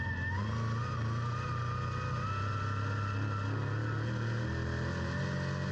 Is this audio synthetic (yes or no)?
no